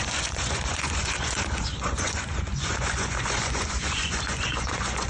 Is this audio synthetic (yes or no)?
yes